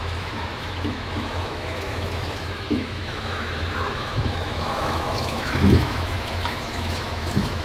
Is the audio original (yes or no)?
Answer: no